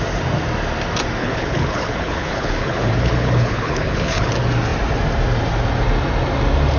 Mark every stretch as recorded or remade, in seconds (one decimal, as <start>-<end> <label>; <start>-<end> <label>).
0.0-1.2 recorded; 1.2-4.3 remade; 4.3-6.8 recorded